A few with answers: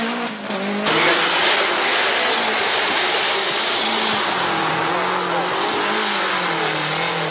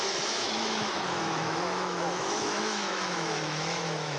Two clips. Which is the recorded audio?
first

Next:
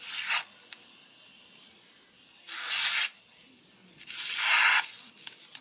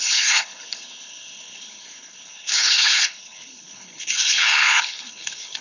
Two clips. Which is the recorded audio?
first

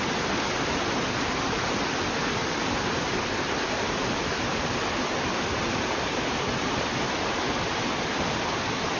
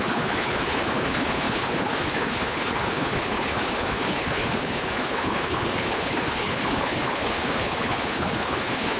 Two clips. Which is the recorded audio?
first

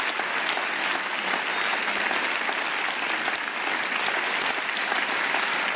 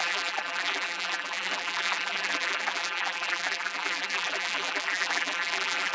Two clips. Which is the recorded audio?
first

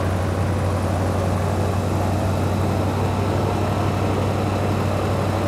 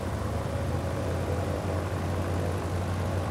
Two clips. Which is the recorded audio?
first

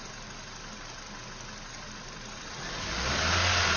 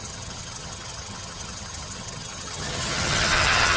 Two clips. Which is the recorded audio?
first